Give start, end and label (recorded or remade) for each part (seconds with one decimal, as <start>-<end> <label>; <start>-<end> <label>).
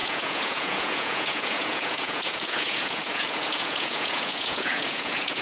0.0-5.4 remade